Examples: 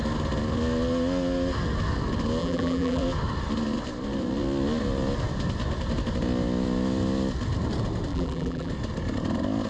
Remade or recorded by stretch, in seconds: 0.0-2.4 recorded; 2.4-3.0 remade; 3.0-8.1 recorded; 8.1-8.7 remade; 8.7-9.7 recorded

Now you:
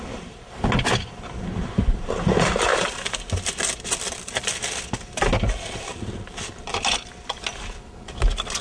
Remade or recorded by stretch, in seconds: 0.0-8.6 recorded

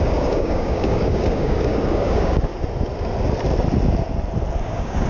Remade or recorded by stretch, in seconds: 0.0-2.5 remade; 2.5-4.6 recorded; 4.6-5.1 remade